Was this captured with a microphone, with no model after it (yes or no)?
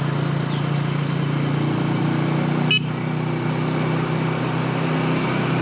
yes